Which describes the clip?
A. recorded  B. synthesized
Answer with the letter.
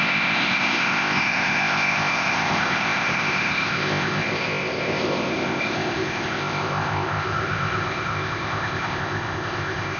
B